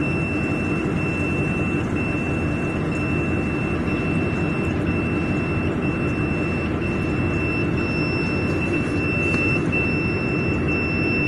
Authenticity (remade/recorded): recorded